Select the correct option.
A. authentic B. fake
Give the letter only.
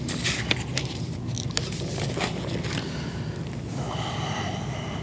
A